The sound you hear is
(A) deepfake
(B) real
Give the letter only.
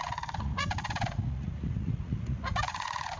A